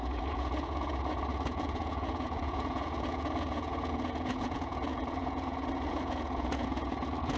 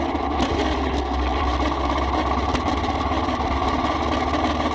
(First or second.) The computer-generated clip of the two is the first